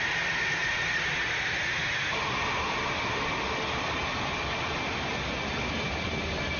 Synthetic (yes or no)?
no